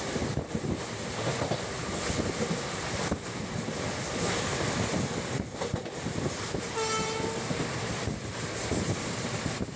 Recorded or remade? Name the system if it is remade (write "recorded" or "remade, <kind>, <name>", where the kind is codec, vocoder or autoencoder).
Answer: recorded